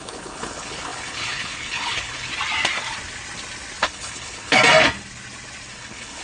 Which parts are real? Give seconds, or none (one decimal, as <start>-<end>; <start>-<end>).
2.3-3.8; 4.6-5.7